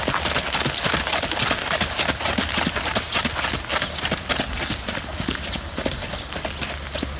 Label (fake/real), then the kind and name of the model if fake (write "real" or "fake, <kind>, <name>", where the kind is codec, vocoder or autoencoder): real